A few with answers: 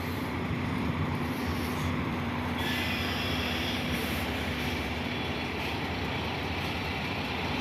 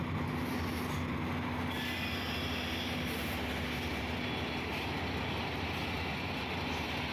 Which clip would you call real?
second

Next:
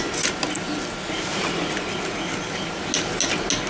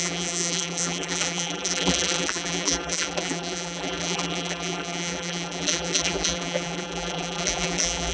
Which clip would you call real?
first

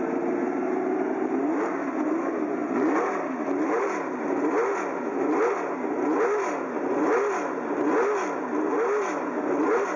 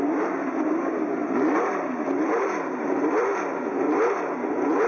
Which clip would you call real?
first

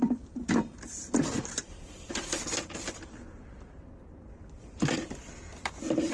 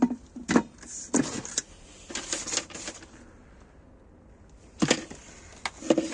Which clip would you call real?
second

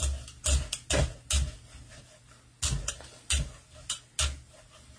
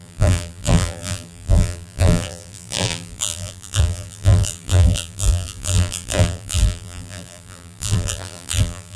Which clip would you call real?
first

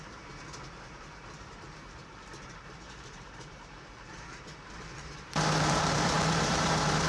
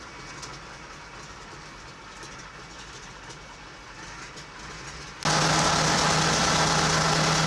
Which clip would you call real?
second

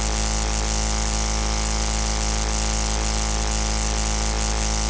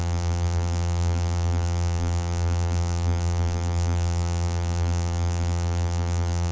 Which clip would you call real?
first